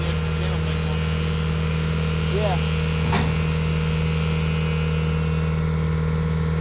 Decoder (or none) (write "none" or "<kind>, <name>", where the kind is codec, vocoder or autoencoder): none